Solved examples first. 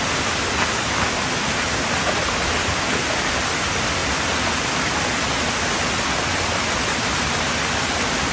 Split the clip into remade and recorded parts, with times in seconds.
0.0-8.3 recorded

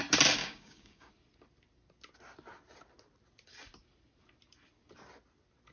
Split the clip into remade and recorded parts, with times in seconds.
0.0-0.4 recorded; 0.4-1.1 remade; 1.1-5.7 recorded

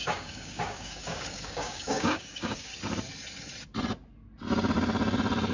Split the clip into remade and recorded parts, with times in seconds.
0.0-2.7 remade; 2.7-5.5 recorded

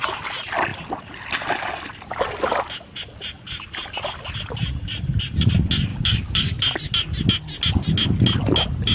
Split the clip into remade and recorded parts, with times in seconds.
0.0-5.9 recorded; 5.9-6.6 remade; 6.6-8.9 recorded

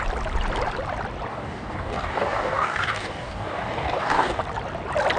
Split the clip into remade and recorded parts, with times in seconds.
0.0-1.3 recorded; 1.3-4.4 remade; 4.4-5.2 recorded

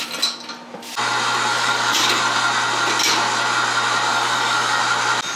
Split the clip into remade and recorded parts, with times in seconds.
0.0-1.5 recorded; 1.5-2.2 remade; 2.2-4.1 recorded; 4.1-4.8 remade; 4.8-5.4 recorded

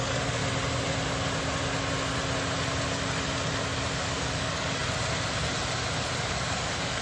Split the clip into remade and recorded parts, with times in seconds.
0.0-0.4 remade; 0.4-4.0 recorded; 4.0-4.8 remade; 4.8-6.2 recorded; 6.2-7.0 remade